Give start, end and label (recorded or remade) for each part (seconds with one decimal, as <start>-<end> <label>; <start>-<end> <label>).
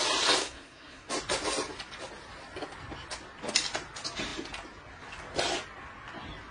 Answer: 0.0-0.4 recorded; 0.4-1.1 remade; 1.1-6.5 recorded